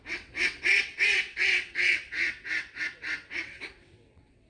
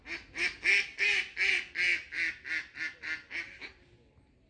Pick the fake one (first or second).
first